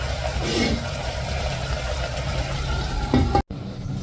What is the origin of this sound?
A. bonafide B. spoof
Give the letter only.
A